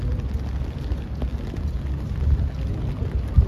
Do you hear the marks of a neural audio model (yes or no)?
no